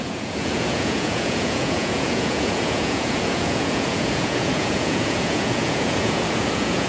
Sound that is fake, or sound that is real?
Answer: fake